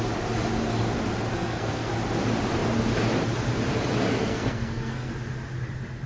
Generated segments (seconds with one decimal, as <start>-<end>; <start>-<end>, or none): 1.3-1.9; 4.2-5.1